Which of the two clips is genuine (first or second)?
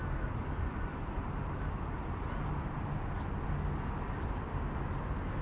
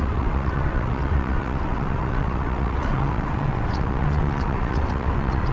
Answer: first